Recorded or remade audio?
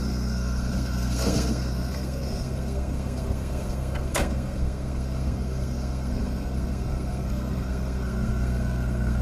remade